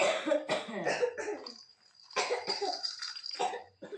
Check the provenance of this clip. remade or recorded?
remade